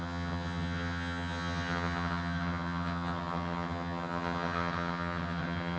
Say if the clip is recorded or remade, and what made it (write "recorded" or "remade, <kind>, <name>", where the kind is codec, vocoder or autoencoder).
remade, vocoder, HiFi-GAN